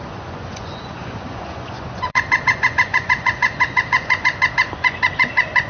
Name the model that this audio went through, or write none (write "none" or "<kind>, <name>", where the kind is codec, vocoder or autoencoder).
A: vocoder, Vocos